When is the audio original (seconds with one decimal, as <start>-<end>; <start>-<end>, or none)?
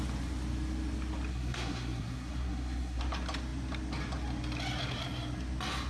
0.0-1.3; 3.0-5.9